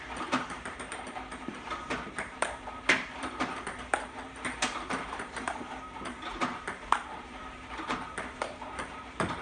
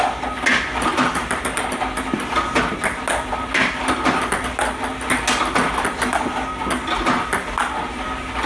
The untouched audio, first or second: second